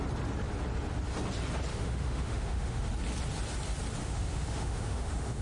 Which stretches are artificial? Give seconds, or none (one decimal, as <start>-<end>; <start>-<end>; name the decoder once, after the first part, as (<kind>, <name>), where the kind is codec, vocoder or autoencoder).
1.7-2.9 (autoencoder, DAC-VAE); 4.0-5.4